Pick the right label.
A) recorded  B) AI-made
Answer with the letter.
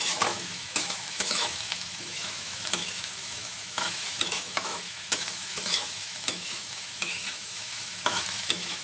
B